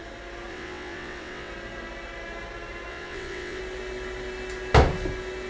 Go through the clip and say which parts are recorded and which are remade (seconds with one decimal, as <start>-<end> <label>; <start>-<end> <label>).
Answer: 0.0-0.5 recorded; 0.5-1.5 remade; 1.5-2.9 recorded; 2.9-3.6 remade; 3.6-5.5 recorded